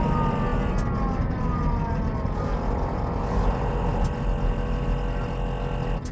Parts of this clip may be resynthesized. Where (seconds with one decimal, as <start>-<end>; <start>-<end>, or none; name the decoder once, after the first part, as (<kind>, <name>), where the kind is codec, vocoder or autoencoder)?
none